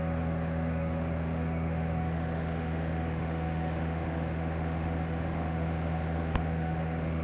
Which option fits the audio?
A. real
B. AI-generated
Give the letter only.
B